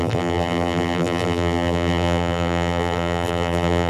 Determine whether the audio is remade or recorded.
remade